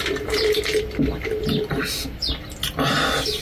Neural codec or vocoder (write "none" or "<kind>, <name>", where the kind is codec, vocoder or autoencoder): none